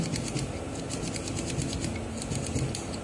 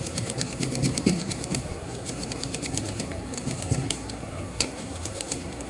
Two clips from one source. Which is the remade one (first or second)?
second